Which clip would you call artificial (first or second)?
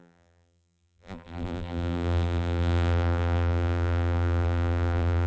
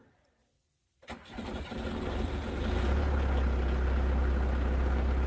first